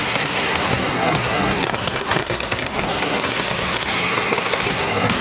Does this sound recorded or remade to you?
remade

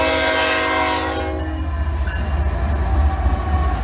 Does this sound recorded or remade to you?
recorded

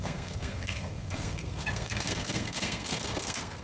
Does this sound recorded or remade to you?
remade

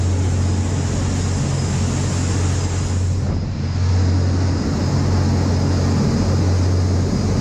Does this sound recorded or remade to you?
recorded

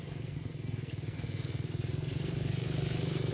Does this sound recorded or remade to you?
remade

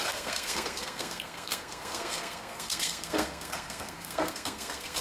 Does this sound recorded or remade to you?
remade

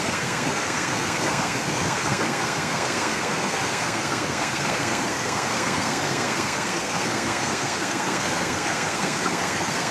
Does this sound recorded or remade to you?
remade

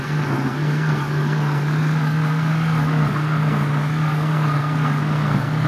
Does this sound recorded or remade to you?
remade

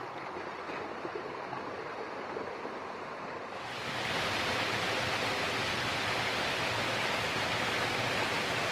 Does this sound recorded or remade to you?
recorded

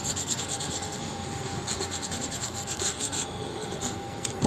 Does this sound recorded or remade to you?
remade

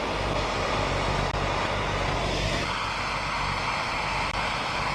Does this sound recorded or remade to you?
recorded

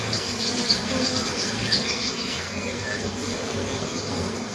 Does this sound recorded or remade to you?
remade